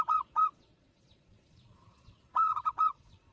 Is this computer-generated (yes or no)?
yes